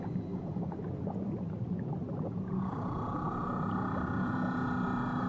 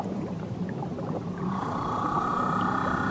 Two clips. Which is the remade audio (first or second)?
second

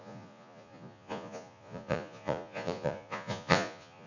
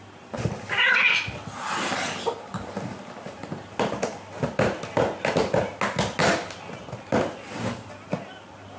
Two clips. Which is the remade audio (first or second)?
first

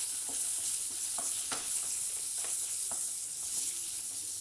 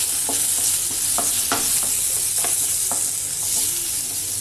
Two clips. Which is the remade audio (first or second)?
first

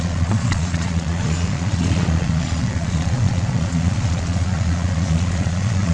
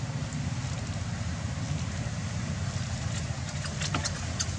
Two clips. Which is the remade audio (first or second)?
first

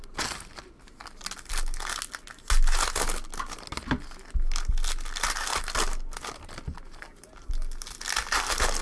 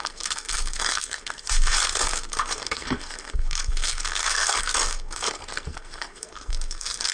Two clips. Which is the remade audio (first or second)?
second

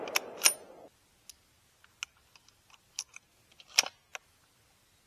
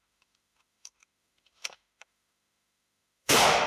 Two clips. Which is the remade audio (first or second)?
second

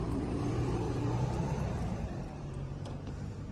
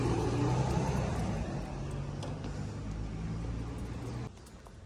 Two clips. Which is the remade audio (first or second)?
first